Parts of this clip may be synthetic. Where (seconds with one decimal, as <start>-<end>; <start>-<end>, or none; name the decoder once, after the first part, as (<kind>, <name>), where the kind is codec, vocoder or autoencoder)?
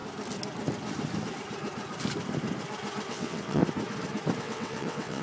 3.1-3.6 (vocoder, WaveNeXt); 4.4-5.2